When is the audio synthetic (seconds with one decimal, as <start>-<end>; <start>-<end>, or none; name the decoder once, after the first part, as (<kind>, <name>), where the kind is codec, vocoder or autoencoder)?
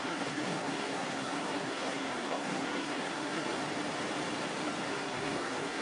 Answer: 0.0-3.6 (codec, SNAC); 4.9-5.8